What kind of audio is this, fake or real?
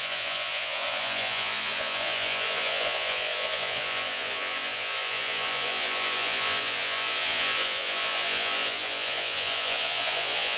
fake